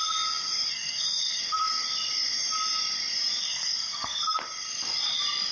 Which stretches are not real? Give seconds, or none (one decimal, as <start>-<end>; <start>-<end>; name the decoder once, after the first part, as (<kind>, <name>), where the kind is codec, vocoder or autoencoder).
0.7-1.4 (codec, SNAC); 3.4-4.4